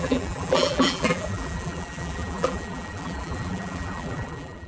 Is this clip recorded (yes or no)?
no